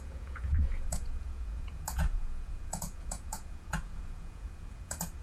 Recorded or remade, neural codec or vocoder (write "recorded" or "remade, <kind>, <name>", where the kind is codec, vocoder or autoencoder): remade, vocoder, Vocos